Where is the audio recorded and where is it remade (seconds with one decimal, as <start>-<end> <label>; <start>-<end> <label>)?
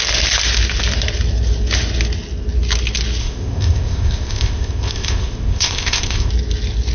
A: 0.0-3.2 recorded; 3.2-6.3 remade; 6.3-6.9 recorded